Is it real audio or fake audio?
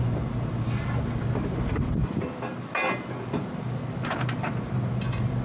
real